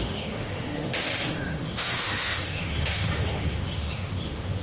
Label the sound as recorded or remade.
remade